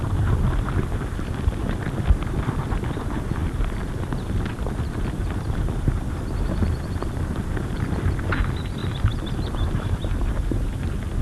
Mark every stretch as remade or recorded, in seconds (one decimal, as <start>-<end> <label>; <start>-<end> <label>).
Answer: 0.0-3.4 recorded; 3.4-5.6 remade; 5.6-6.6 recorded; 6.6-8.2 remade; 8.2-11.2 recorded